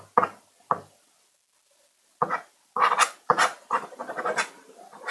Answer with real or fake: real